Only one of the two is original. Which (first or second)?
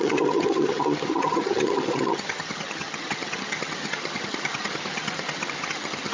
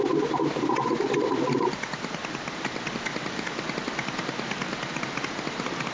second